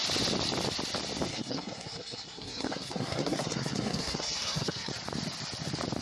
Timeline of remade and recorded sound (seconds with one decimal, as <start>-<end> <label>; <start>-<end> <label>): 0.0-1.3 recorded; 1.3-4.9 remade; 4.9-6.0 recorded